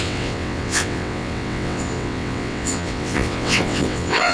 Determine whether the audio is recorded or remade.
remade